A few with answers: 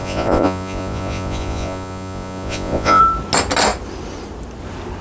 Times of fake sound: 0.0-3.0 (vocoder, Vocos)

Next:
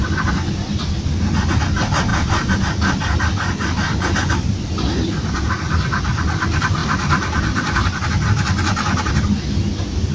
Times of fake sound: none